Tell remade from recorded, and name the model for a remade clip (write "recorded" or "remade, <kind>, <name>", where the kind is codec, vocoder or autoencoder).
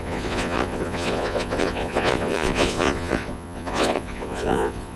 remade, vocoder, Vocos